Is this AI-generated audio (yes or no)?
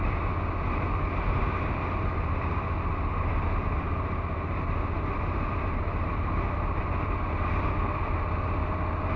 no